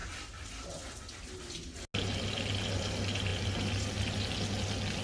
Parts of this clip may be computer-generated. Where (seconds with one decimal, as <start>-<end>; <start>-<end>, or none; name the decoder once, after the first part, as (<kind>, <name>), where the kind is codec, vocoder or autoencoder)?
none

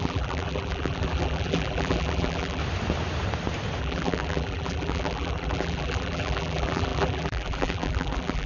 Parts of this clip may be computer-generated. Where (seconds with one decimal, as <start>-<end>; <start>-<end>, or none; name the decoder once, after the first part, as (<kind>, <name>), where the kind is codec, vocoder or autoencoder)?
0.0-2.6 (vocoder, BigVGAN v2); 3.8-8.5

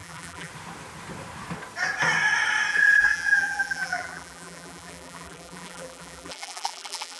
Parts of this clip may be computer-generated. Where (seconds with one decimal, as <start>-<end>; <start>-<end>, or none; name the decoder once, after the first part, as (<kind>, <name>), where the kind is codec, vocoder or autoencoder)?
0.0-0.5 (vocoder, BigVGAN v2); 2.7-7.2

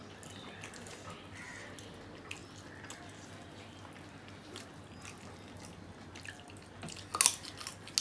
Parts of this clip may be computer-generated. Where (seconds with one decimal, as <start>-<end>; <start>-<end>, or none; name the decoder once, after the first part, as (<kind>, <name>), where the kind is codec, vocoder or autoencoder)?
none

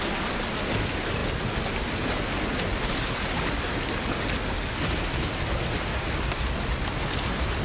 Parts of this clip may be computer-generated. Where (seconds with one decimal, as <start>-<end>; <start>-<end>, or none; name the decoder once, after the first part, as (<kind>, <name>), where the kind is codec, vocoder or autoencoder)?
none

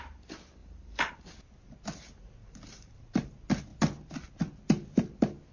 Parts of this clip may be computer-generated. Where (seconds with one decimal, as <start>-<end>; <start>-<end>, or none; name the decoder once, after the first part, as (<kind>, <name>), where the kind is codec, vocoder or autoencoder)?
0.6-1.1 (vocoder, BigVGAN v2); 2.4-3.3